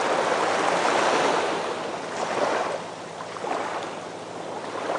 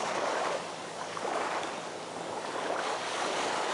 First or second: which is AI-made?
second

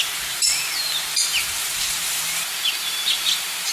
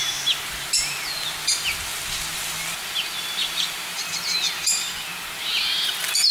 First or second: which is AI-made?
first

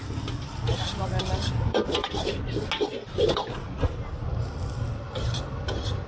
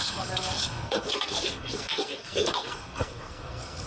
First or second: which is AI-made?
second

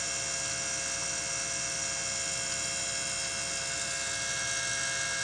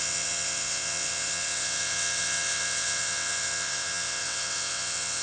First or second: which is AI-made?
second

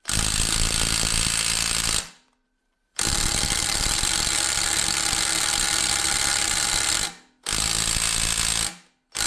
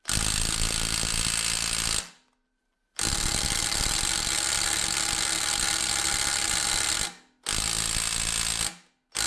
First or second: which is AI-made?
first